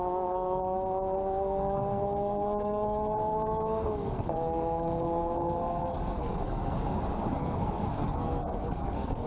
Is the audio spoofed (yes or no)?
yes